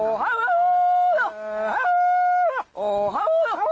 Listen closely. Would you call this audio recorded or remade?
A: recorded